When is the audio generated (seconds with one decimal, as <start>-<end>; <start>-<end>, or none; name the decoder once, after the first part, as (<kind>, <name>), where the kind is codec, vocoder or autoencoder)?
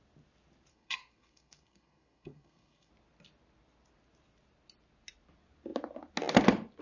0.7-2.9 (codec, SNAC)